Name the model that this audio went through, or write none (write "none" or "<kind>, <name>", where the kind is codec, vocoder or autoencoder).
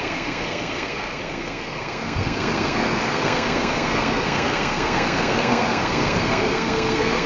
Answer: codec, SNAC